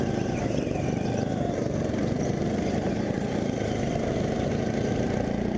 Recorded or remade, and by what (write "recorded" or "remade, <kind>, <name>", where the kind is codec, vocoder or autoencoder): remade, vocoder, BigVGAN v2